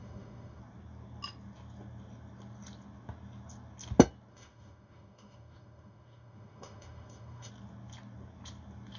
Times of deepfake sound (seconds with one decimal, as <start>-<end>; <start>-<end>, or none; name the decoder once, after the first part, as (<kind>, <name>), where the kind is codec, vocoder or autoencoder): 0.0-0.6 (autoencoder, DAC-VAE); 4.3-7.5